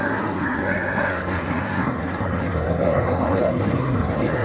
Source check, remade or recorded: remade